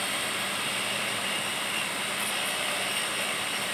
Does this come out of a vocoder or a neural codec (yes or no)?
yes